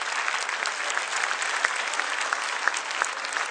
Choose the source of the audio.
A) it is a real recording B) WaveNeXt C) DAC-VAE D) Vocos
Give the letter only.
A